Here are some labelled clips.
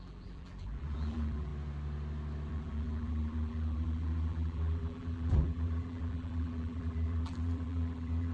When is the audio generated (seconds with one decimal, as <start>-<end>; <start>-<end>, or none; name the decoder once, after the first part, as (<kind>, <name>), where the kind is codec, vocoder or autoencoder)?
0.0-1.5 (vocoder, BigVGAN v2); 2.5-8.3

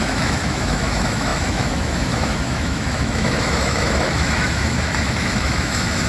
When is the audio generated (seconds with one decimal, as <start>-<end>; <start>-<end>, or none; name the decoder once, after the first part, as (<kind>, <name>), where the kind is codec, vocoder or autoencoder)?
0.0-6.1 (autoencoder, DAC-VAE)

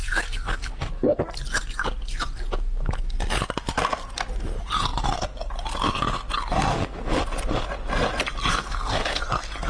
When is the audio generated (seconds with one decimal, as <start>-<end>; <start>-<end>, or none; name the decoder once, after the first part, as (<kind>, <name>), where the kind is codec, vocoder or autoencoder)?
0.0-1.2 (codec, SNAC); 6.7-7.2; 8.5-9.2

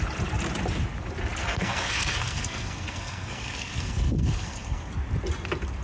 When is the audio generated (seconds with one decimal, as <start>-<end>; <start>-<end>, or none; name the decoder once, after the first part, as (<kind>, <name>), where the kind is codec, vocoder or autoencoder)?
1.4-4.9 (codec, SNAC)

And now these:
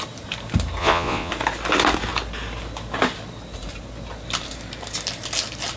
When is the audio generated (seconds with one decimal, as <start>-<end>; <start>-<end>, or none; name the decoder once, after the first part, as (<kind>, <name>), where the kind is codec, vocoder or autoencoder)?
0.8-1.3 (vocoder, Vocos)

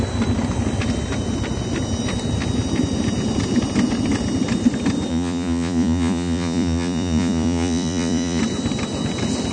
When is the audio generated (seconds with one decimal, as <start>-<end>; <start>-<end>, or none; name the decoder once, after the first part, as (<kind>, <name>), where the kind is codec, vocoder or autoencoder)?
5.1-8.4 (vocoder, Vocos)